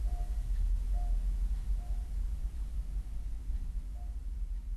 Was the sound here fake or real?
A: real